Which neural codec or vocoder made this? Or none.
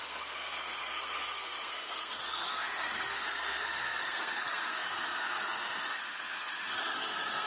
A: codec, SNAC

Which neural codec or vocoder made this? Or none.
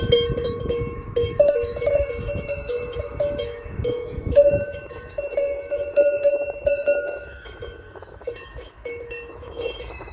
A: autoencoder, DAC-VAE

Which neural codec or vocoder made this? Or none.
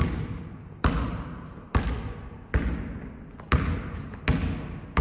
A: none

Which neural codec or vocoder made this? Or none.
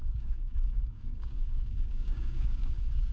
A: codec, DAC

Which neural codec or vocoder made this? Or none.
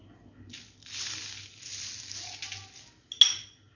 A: none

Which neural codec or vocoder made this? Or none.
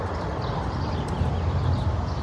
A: none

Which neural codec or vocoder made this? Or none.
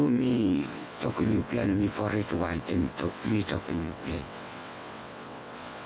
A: vocoder, WaveNeXt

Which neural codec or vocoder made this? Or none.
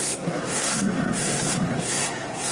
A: codec, SNAC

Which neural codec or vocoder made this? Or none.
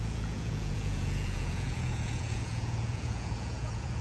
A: vocoder, Vocos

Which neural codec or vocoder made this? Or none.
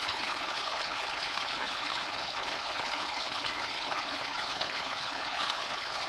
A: codec, HILCodec